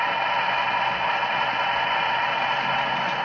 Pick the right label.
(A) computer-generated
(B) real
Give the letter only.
B